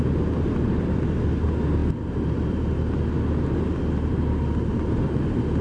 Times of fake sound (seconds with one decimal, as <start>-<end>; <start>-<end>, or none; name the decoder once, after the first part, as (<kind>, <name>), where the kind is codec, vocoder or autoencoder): none